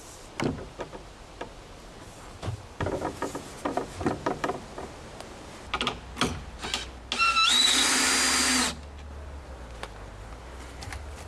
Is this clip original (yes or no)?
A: yes